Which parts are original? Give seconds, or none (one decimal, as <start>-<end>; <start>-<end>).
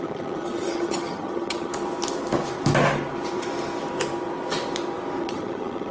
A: 1.7-5.2